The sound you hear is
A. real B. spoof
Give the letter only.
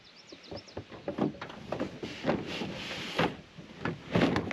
A